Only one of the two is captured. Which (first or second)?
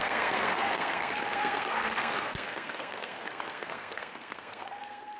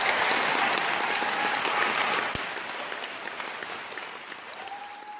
second